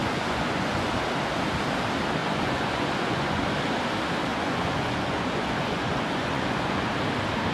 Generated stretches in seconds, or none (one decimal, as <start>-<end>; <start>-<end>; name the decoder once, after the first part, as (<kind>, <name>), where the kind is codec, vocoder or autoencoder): 0.0-0.9 (vocoder, Vocos); 2.2-3.4; 4.3-6.9